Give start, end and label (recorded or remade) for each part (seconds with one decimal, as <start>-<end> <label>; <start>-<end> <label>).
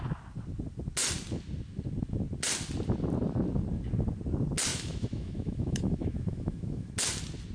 0.0-4.7 recorded; 4.7-6.9 remade; 6.9-7.5 recorded